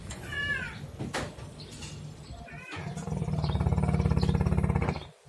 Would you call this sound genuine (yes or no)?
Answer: yes